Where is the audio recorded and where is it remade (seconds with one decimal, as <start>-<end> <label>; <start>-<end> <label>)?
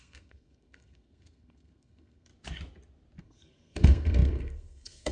0.0-2.3 remade; 2.3-3.2 recorded; 3.2-5.1 remade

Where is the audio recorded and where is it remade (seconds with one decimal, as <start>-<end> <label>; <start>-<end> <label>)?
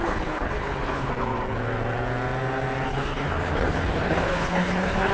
0.0-1.1 remade; 1.1-2.9 recorded; 2.9-5.1 remade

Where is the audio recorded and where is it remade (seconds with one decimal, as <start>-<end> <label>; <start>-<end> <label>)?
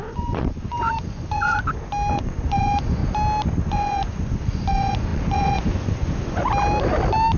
0.0-1.6 remade; 1.6-2.1 recorded; 2.1-3.0 remade; 3.0-3.6 recorded; 3.6-6.4 remade; 6.4-7.4 recorded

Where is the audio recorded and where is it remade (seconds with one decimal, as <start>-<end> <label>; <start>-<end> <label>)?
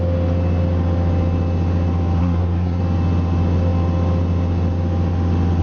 0.0-2.2 recorded; 2.2-2.8 remade; 2.8-5.6 recorded